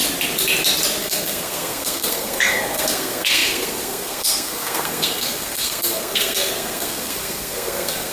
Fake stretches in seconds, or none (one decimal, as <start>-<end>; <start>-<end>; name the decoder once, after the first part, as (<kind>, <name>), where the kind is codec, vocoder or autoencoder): 1.0-8.1 (codec, SNAC)